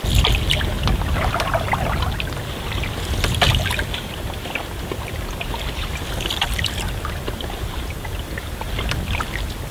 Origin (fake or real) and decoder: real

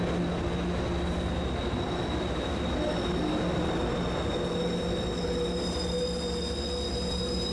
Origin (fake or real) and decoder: real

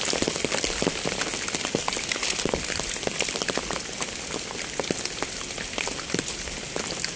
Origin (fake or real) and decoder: real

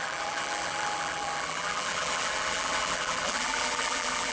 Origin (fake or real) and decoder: fake, vocoder, BigVGAN v2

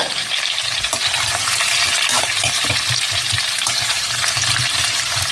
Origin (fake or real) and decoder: fake, vocoder, BigVGAN v2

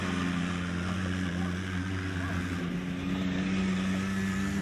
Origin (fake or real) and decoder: real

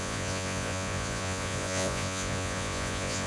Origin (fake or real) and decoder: fake, vocoder, Vocos